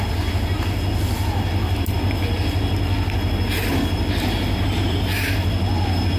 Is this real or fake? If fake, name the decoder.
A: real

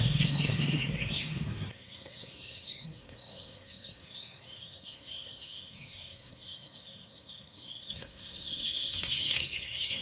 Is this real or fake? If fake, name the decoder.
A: fake, codec, SNAC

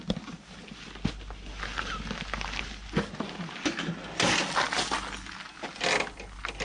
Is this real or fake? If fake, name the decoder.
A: real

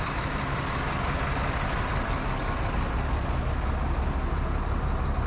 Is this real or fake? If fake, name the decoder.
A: real